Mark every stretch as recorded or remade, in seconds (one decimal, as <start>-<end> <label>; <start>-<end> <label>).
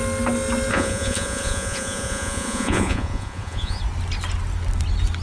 0.0-0.7 recorded; 0.7-3.8 remade; 3.8-5.2 recorded